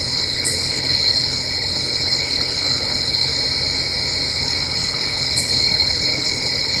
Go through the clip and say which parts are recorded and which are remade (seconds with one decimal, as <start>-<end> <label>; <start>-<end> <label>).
0.0-3.3 remade; 3.3-4.3 recorded; 4.3-6.8 remade